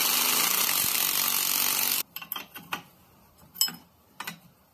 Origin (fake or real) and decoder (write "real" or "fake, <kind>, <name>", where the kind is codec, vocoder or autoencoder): real